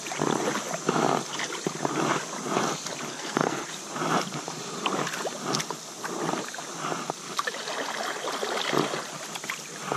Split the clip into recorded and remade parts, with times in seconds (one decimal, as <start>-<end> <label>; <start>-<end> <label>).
0.0-3.1 recorded; 3.1-3.7 remade; 3.7-10.0 recorded